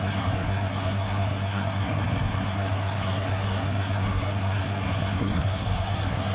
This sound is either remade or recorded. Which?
remade